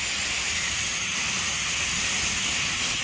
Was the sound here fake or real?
real